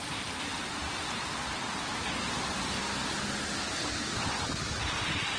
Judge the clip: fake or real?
real